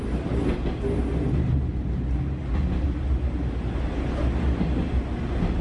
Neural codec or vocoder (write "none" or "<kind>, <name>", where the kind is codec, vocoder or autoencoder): none